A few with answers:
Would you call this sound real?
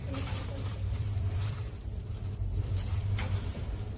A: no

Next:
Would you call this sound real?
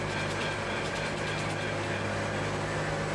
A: yes